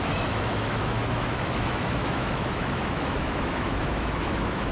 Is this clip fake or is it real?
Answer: fake